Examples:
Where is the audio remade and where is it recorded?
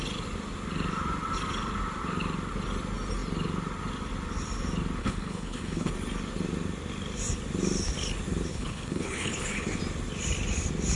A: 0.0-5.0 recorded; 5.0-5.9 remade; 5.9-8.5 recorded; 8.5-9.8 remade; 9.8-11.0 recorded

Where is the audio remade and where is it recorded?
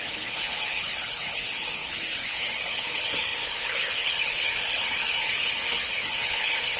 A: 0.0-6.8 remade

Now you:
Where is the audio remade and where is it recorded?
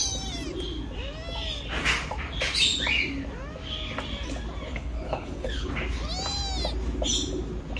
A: 0.0-4.7 recorded; 4.7-5.7 remade; 5.7-7.8 recorded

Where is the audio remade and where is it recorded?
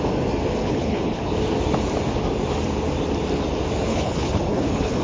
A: 0.0-0.6 recorded; 0.6-1.3 remade; 1.3-3.9 recorded; 3.9-5.0 remade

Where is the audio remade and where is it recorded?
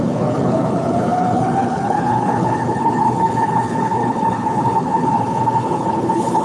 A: 0.0-6.4 remade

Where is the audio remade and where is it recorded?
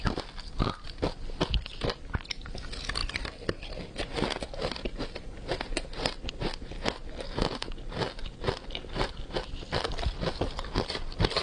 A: 0.0-11.4 recorded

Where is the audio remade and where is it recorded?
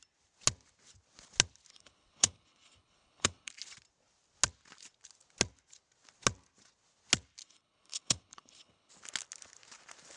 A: 0.0-1.7 recorded; 1.7-3.5 remade; 3.5-7.4 recorded; 7.4-8.9 remade; 8.9-10.2 recorded